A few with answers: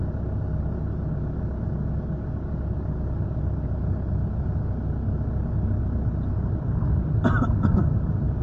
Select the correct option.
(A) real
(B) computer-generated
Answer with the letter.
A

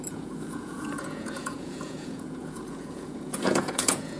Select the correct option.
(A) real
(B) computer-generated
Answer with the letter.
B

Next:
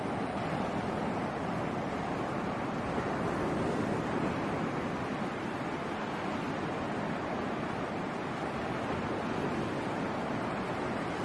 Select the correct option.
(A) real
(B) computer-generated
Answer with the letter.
A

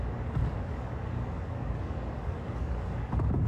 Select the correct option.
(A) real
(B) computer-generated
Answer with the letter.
B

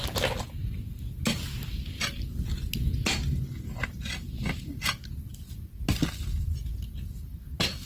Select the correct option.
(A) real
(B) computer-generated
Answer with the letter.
A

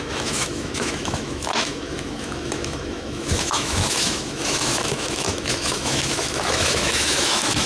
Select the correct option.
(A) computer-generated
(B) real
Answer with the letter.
A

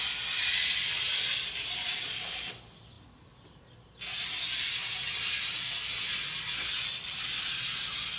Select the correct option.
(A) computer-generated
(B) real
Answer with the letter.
B